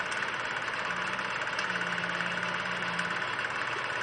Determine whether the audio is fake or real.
real